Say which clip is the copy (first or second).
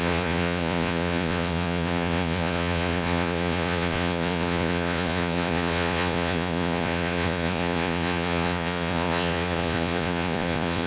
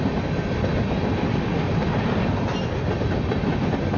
first